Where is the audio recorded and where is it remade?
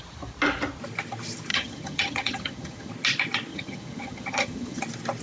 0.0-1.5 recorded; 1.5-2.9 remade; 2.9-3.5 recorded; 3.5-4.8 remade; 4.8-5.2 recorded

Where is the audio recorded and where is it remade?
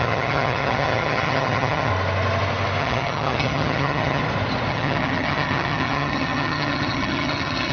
0.0-1.9 remade; 1.9-2.8 recorded; 2.8-4.2 remade; 4.2-4.7 recorded; 4.7-7.7 remade